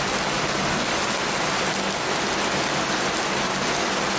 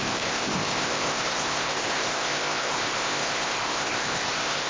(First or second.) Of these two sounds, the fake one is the second